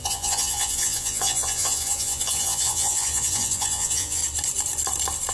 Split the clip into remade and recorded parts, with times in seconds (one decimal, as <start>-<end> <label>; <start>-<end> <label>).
0.0-4.2 remade; 4.2-5.3 recorded